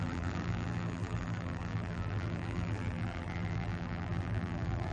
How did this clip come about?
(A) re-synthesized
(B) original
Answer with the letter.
A